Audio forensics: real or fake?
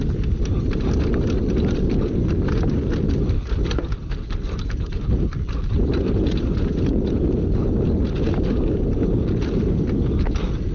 real